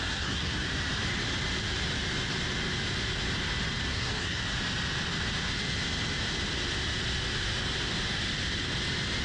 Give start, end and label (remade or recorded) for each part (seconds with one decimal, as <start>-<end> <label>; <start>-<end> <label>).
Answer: 0.0-0.7 remade; 0.7-3.9 recorded; 3.9-4.4 remade; 4.4-9.2 recorded